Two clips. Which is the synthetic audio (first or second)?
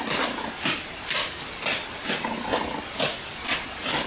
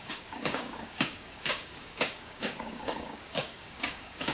second